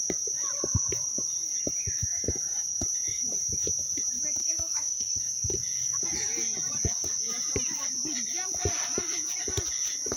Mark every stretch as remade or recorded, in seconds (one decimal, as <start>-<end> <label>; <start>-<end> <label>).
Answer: 0.0-4.4 recorded; 4.4-5.2 remade; 5.2-10.2 recorded

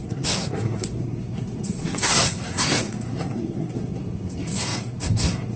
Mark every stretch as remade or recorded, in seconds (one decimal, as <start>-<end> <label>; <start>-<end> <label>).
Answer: 0.0-5.6 remade

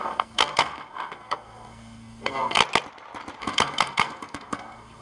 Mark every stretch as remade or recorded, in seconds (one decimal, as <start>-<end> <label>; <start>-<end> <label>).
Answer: 0.0-2.6 remade; 2.6-3.4 recorded; 3.4-5.0 remade

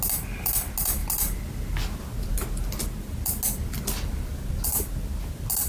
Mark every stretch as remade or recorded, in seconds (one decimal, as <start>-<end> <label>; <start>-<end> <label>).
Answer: 0.0-5.7 recorded

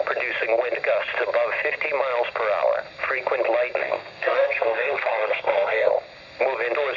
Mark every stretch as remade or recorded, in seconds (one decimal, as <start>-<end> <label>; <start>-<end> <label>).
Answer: 0.0-3.8 recorded; 3.8-5.9 remade; 5.9-7.0 recorded

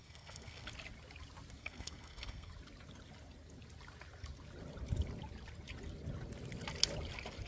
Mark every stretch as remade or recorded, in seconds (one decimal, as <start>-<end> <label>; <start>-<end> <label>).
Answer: 0.0-0.7 remade; 0.7-1.6 recorded; 1.6-2.5 remade; 2.5-7.5 recorded

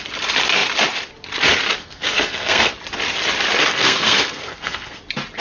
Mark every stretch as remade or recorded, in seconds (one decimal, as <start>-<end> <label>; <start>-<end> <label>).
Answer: 0.0-1.8 recorded; 1.8-2.7 remade; 2.7-3.7 recorded; 3.7-5.0 remade; 5.0-5.4 recorded

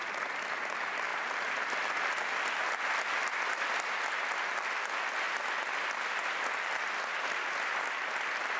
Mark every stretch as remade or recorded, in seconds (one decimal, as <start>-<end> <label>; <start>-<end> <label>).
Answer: 0.0-8.6 recorded